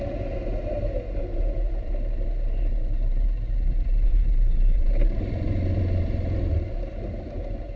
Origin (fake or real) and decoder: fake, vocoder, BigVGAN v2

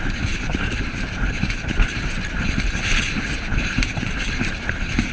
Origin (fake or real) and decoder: fake, vocoder, BigVGAN v2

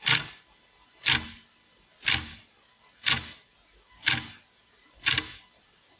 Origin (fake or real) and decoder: real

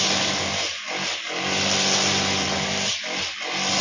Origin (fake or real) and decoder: real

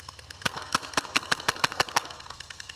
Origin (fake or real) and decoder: fake, codec, SNAC